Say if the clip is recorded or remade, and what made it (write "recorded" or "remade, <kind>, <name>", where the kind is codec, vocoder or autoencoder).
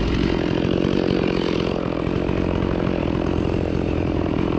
remade, vocoder, BigVGAN v2